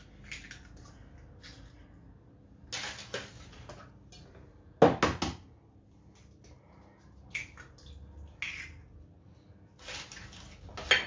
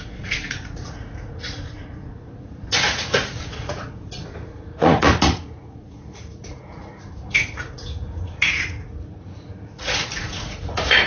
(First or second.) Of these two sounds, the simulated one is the second